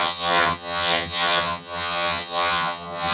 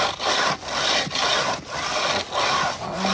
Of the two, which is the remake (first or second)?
first